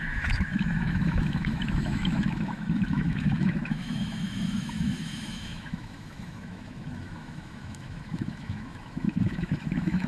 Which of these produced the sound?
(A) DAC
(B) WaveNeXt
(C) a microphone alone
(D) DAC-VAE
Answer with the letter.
D